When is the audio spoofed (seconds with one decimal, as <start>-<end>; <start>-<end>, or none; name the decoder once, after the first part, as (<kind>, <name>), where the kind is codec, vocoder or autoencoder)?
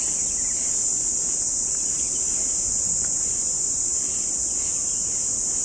2.9-3.9 (vocoder, Vocos)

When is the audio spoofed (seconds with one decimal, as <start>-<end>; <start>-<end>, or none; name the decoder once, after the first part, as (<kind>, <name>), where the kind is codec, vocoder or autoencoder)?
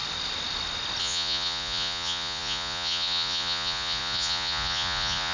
1.0-5.3 (vocoder, Vocos)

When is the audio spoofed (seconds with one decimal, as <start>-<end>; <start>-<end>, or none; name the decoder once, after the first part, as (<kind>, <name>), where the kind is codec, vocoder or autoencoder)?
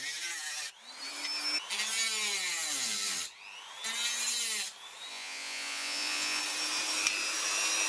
5.1-6.4 (vocoder, Vocos)